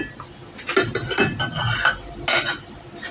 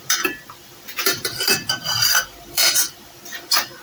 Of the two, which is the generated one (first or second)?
second